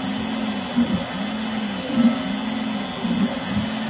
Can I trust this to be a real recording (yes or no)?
yes